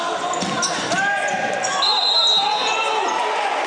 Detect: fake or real real